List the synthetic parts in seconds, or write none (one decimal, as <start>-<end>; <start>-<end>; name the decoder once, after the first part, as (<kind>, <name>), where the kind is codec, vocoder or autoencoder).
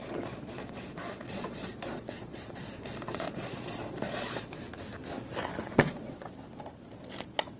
0.0-4.6 (vocoder, Vocos); 5.6-6.3